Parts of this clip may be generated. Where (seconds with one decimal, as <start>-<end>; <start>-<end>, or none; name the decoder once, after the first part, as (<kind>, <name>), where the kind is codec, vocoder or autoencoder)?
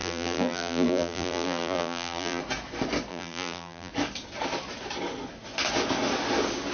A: 0.0-2.4 (vocoder, BigVGAN v2); 3.1-3.9